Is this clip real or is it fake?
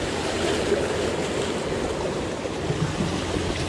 real